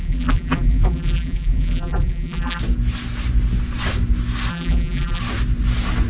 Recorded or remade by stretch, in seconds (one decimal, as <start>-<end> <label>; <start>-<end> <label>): 0.0-2.6 remade; 2.6-4.5 recorded; 4.5-5.2 remade; 5.2-6.1 recorded